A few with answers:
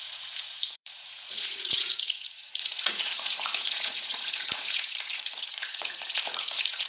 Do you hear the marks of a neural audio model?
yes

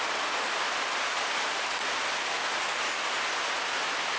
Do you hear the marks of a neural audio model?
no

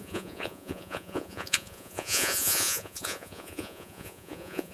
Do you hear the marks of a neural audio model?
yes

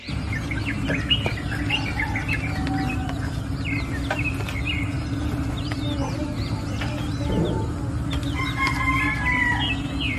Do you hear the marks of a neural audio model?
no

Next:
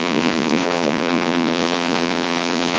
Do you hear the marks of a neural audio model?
yes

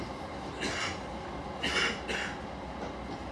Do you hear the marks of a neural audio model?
no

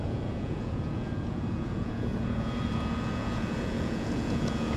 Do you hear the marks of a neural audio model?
yes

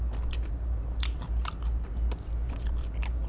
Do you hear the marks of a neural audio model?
no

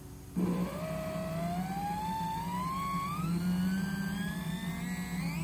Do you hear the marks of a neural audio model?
no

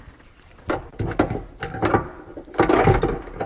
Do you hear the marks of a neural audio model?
no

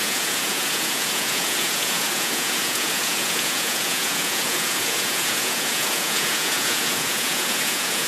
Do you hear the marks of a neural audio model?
yes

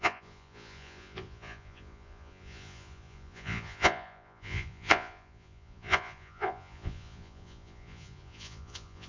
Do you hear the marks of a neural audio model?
yes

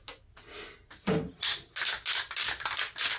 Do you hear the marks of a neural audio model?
no